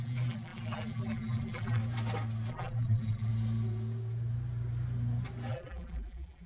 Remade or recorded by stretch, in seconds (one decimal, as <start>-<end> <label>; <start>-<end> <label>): 0.0-1.8 remade; 1.8-2.5 recorded; 2.5-3.3 remade; 3.3-5.5 recorded; 5.5-6.5 remade

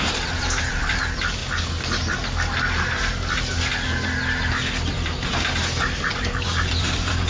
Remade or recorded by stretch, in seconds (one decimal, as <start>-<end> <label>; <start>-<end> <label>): 0.0-1.4 remade; 1.4-5.8 recorded; 5.8-7.3 remade

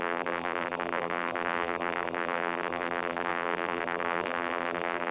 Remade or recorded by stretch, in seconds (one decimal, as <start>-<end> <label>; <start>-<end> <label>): 0.0-5.1 remade

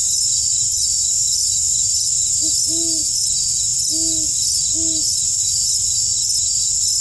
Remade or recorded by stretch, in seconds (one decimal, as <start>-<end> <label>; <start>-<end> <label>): 0.0-2.6 remade; 2.6-7.0 recorded